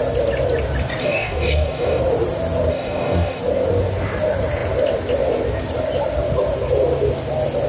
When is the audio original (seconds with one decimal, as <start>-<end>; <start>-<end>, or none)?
0.0-1.0; 2.0-2.7; 3.4-7.7